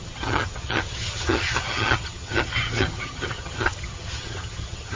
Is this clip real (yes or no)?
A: no